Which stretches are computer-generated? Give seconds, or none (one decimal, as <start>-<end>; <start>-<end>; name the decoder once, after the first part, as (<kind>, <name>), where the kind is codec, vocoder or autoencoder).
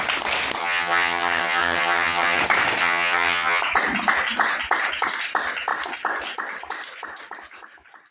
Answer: 0.6-2.4 (vocoder, HiFi-GAN); 2.8-3.6